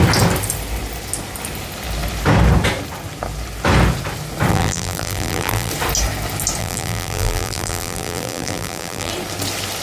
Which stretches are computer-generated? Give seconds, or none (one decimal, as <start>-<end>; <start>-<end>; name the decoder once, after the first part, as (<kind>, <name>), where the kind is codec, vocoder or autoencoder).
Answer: 4.5-5.7 (vocoder, BigVGAN v2); 6.6-9.1